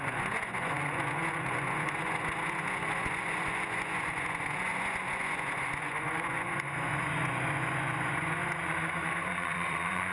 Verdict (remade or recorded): remade